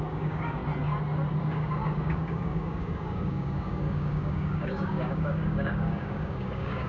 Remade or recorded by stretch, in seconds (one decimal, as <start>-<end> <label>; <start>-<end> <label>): 0.0-0.6 remade; 0.6-1.4 recorded; 1.4-6.9 remade